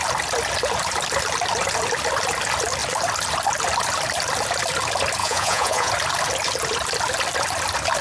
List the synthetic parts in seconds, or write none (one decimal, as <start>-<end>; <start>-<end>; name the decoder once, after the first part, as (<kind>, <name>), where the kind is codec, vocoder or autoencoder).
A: 5.2-5.9 (vocoder, Vocos)